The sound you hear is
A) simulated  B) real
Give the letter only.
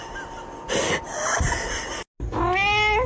B